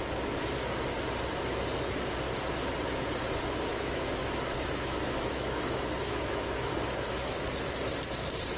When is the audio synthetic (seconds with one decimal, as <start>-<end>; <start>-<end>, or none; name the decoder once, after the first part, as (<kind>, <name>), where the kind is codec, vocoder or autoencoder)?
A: 3.7-6.7 (autoencoder, DAC-VAE)